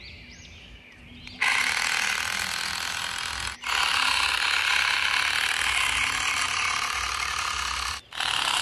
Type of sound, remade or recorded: recorded